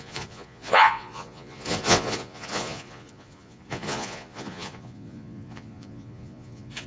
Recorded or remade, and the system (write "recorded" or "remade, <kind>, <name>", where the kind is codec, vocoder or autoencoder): remade, vocoder, Vocos